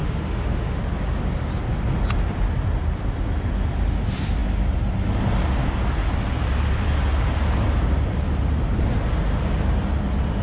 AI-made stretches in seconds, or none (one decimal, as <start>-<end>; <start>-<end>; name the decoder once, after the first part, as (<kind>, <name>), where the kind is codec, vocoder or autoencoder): 0.0-0.8 (autoencoder, DAC-VAE)